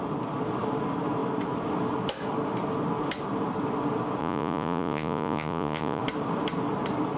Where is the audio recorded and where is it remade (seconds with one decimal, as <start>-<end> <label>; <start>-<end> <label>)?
0.0-4.2 recorded; 4.2-6.0 remade; 6.0-7.2 recorded